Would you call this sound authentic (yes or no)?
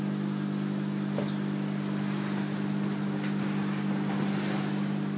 yes